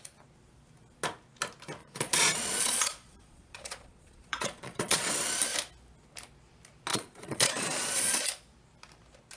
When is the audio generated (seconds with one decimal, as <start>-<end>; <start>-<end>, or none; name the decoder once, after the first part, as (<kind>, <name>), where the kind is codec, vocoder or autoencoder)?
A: 1.8-5.1 (vocoder, Vocos); 6.9-8.2